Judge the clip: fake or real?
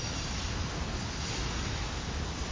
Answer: real